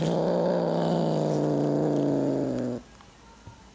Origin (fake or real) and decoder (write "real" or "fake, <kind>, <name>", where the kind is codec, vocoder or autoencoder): real